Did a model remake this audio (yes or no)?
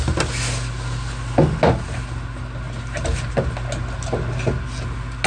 no